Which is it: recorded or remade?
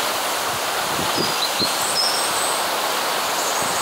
recorded